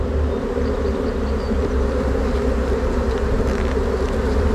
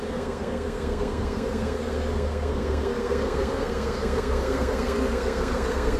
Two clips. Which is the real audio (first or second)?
first